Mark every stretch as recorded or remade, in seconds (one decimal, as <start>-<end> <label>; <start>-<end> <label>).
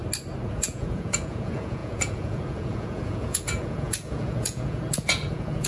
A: 0.0-0.5 recorded; 0.5-5.7 remade